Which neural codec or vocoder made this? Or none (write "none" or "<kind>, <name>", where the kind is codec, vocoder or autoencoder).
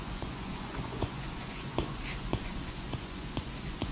vocoder, Vocos